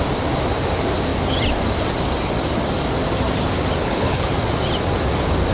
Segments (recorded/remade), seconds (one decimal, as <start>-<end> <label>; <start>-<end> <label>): 0.0-3.8 recorded; 3.8-4.3 remade; 4.3-5.5 recorded